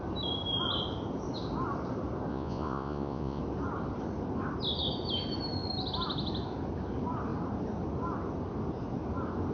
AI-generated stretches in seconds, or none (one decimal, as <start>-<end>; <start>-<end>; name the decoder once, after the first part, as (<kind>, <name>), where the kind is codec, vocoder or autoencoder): 2.3-3.4 (vocoder, Vocos)